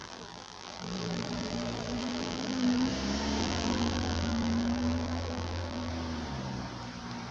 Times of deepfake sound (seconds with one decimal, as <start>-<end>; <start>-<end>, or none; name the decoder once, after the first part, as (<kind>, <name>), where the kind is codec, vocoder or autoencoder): 0.0-2.9 (vocoder, BigVGAN v2); 3.4-5.9